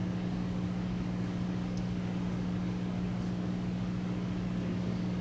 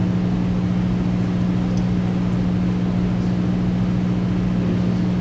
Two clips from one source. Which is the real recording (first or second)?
second